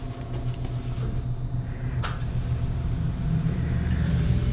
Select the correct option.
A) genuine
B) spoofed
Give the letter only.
A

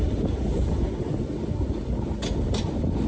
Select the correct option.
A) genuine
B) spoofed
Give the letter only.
A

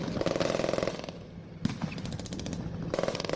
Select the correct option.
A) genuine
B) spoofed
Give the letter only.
A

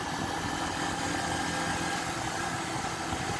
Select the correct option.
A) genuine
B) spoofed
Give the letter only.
A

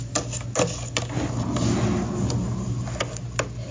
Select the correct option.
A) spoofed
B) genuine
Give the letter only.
B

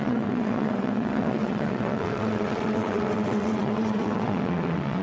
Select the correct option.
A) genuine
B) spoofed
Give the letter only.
B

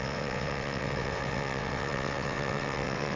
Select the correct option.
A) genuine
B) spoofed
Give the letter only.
B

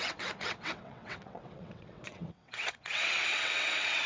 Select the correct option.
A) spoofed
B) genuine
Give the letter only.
A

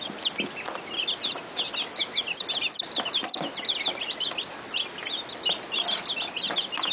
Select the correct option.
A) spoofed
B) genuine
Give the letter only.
B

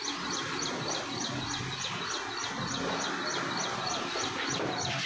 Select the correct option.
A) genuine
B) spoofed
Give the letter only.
A